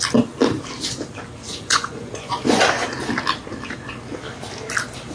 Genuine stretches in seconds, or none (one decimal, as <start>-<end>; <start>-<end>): 0.0-1.5; 2.6-5.1